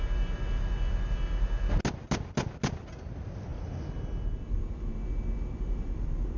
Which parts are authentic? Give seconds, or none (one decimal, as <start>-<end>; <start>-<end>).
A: 0.0-6.4